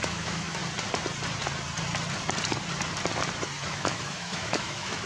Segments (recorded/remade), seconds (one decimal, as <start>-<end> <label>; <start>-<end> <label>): 0.0-0.6 remade; 0.6-3.7 recorded; 3.7-5.1 remade